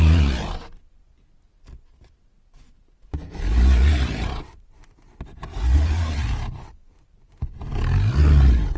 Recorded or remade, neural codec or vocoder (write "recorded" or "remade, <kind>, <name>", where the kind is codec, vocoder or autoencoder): recorded